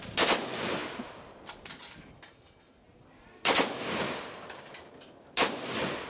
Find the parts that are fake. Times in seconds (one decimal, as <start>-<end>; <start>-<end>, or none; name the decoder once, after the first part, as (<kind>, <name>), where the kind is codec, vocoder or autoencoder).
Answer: none